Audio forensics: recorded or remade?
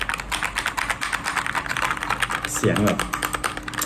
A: recorded